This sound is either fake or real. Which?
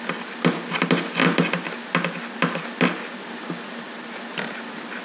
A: real